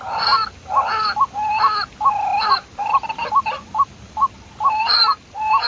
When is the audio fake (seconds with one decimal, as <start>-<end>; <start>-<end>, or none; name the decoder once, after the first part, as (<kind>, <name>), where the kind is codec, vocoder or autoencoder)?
none